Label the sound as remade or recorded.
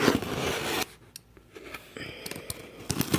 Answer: recorded